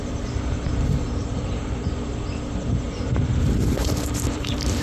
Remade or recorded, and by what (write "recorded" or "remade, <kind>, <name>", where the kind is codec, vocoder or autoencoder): remade, vocoder, BigVGAN v2